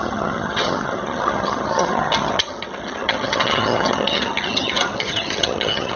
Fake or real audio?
fake